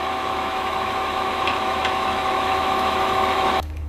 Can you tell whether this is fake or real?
fake